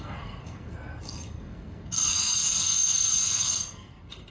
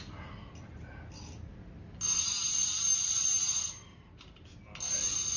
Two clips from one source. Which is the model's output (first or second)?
first